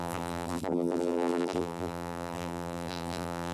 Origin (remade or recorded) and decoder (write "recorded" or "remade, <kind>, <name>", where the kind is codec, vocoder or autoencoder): remade, vocoder, BigVGAN v2